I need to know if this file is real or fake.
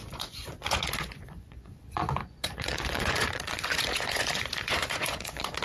fake